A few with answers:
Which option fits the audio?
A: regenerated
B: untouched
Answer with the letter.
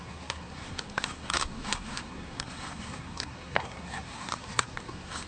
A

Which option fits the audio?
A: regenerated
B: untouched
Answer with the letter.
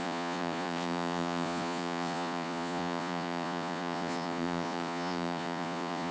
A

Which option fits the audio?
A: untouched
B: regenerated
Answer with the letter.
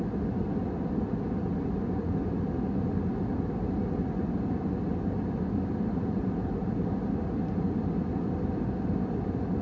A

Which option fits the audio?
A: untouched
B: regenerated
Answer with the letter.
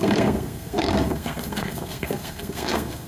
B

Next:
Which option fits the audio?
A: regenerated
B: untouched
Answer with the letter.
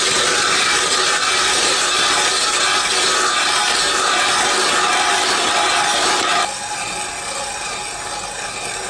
B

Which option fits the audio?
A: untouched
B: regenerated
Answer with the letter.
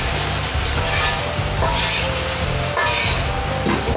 A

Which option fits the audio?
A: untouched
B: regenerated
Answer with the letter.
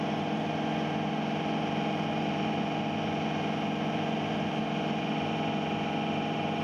A